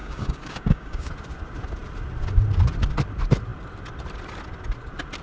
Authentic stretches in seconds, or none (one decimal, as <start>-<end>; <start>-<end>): 1.1-5.2